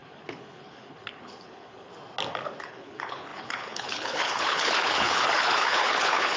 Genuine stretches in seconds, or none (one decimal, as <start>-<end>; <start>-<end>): 1.9-2.6

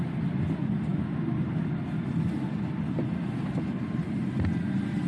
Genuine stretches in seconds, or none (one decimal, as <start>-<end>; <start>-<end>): 0.0-5.1

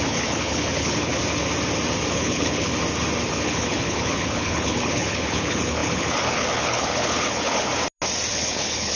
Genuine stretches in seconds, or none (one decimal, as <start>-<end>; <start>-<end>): 1.1-2.1; 2.7-3.3; 7.7-8.3

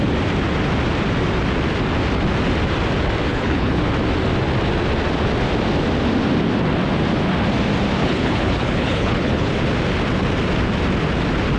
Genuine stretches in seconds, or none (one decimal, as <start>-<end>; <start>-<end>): 0.0-3.3; 3.8-8.0; 9.5-11.6